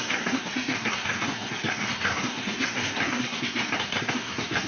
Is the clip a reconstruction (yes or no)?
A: yes